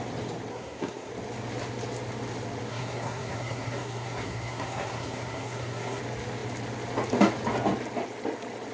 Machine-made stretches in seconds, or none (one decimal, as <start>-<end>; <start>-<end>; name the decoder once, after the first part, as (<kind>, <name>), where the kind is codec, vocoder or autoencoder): 0.5-1.1 (codec, SNAC); 2.7-6.0

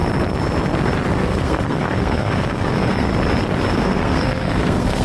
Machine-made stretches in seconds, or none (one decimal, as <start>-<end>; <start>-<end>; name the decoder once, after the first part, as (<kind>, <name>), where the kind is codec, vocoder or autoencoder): 1.1-3.1 (codec, SNAC); 3.7-5.0

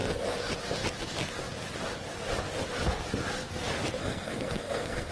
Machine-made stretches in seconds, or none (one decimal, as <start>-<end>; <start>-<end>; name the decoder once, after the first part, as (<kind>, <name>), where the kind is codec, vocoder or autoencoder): 4.0-5.1 (codec, SNAC)

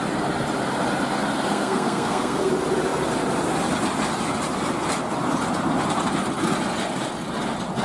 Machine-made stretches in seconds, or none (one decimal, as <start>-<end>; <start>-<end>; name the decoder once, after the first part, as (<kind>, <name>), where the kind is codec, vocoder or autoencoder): 1.5-2.5 (codec, SNAC)

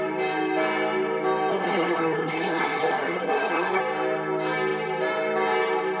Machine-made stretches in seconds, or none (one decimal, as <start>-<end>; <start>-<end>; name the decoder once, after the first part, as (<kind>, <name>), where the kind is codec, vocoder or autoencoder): 1.5-3.8 (codec, SNAC)

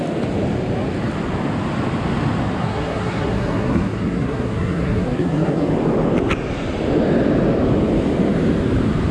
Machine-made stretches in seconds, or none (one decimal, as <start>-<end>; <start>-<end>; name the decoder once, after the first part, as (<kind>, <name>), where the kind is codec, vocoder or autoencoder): 2.6-5.7 (codec, SNAC)

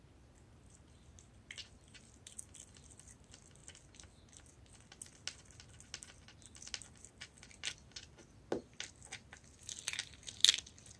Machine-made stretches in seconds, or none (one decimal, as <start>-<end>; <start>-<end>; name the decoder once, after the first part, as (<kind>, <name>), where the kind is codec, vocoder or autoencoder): none